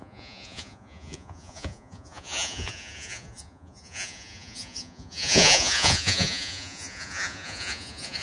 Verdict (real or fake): fake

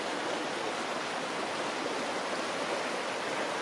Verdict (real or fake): real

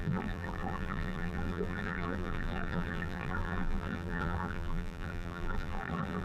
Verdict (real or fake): fake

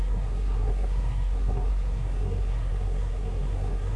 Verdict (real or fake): fake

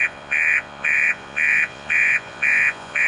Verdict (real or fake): fake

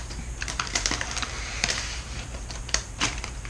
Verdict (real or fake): fake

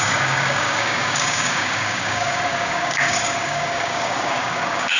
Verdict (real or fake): fake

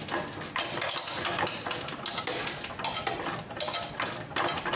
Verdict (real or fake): real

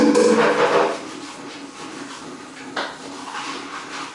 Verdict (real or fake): real